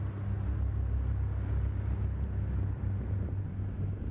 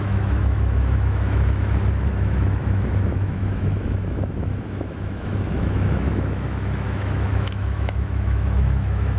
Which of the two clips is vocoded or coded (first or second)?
second